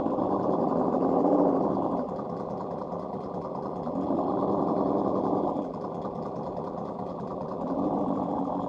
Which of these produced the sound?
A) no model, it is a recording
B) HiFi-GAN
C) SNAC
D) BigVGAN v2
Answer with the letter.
D